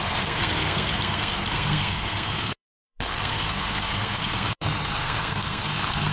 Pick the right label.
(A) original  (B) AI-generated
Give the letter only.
B